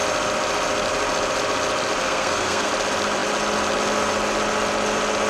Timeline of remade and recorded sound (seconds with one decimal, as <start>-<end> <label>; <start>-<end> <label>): 0.0-2.0 recorded; 2.0-2.7 remade; 2.7-5.3 recorded